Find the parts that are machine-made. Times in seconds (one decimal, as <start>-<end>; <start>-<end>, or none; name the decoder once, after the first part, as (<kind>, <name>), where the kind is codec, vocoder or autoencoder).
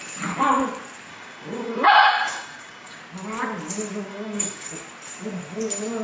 1.1-3.0 (codec, DAC); 4.1-4.7